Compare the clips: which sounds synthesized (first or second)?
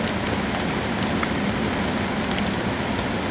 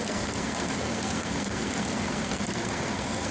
second